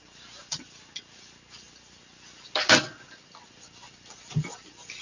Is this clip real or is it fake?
real